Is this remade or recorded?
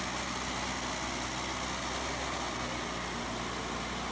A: recorded